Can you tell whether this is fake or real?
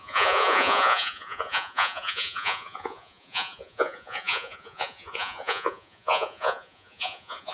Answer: fake